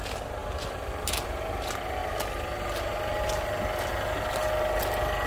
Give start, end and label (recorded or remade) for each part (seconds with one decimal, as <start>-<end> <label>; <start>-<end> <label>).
0.0-5.3 recorded

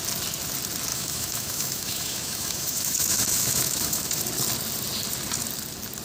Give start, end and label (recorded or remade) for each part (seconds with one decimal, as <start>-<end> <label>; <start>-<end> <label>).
0.0-0.9 recorded; 0.9-4.2 remade; 4.2-6.0 recorded

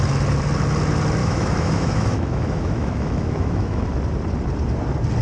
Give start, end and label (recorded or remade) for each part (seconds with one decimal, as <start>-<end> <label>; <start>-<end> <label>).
0.0-1.2 recorded; 1.2-3.9 remade; 3.9-5.2 recorded